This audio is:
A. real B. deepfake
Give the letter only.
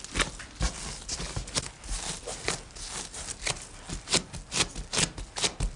A